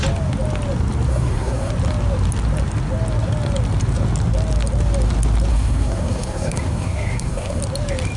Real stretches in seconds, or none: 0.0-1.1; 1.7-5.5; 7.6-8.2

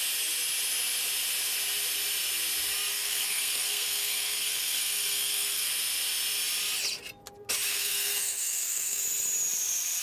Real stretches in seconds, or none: 0.0-2.9; 5.7-7.7; 9.0-10.0

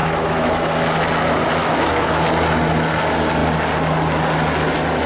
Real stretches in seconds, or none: 0.6-1.6; 2.2-5.1

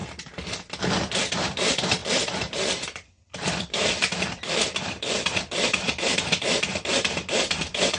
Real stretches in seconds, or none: 0.0-1.1

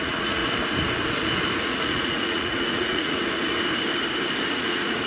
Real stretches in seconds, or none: 0.4-1.6; 3.2-4.5